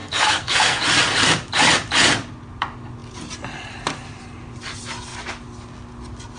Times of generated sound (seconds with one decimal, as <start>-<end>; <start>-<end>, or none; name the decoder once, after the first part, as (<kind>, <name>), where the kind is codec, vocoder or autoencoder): 0.0-0.8 (codec, SNAC)